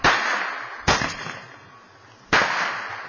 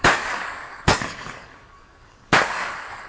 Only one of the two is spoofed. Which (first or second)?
second